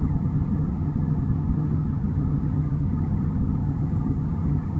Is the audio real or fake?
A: fake